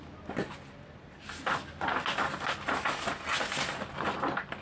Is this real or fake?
real